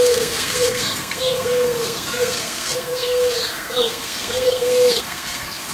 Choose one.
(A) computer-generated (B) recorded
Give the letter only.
A